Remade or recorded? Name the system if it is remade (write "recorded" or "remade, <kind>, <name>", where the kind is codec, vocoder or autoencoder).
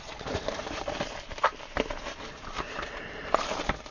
remade, vocoder, BigVGAN v2